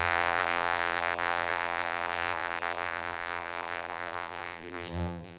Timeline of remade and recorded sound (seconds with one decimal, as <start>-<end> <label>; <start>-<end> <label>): 0.0-5.4 remade